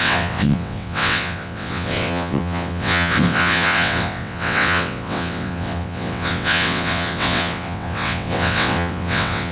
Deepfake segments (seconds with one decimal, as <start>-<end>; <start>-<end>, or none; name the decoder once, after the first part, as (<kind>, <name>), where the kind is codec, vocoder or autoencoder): 0.0-9.5 (vocoder, WaveNeXt)